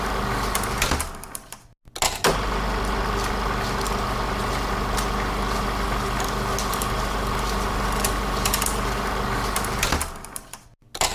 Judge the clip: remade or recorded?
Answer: recorded